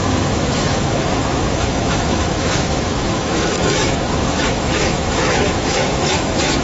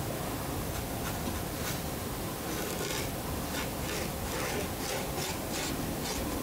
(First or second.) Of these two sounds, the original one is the second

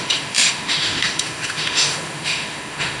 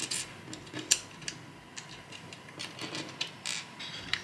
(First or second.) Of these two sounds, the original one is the second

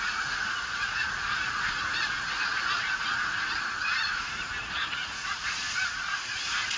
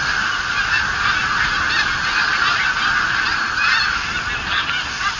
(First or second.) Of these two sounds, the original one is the second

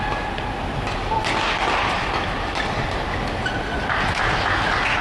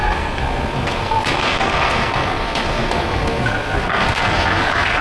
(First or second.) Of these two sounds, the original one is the first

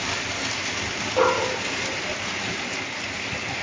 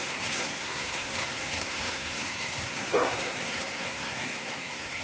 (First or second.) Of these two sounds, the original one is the first